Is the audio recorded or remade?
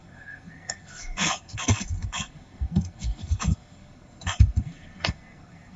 remade